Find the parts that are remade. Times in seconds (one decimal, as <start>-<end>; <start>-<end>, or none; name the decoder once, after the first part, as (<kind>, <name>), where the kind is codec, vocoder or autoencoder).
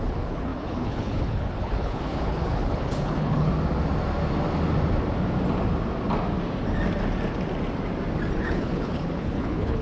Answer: 0.0-3.5 (codec, HILCodec); 8.4-9.8